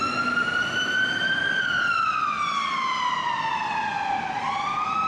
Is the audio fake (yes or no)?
no